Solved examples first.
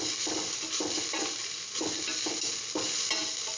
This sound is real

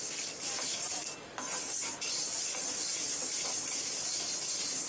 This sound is real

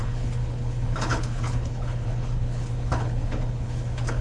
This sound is fake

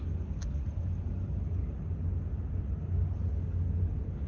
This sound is real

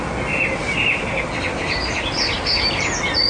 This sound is real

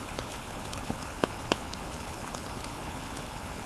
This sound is fake